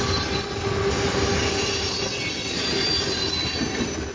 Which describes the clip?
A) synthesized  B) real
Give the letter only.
B